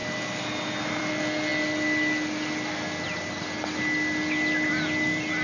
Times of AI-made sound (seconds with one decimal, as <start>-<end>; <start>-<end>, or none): none